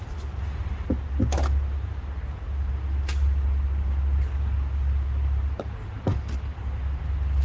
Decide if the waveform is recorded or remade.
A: recorded